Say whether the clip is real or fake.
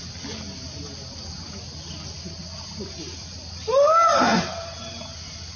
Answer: real